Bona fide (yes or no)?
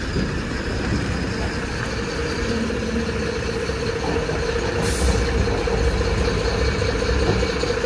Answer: yes